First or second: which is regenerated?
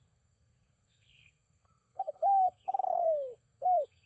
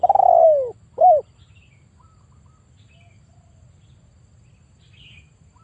first